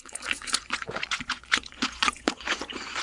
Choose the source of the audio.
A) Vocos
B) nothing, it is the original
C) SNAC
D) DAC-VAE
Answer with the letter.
A